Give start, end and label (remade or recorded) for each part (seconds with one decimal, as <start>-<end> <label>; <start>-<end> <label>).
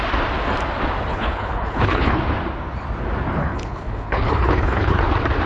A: 0.0-1.1 recorded; 1.1-2.2 remade; 2.2-3.4 recorded; 3.4-5.0 remade; 5.0-5.5 recorded